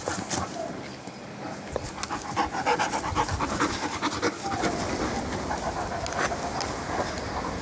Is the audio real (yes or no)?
yes